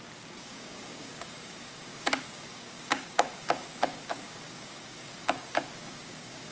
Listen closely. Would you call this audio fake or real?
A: fake